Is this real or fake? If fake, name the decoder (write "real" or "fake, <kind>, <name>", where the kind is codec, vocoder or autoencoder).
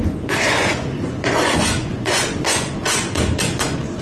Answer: fake, vocoder, Vocos